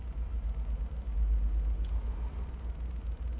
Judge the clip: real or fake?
real